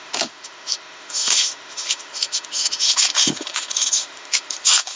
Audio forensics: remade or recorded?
remade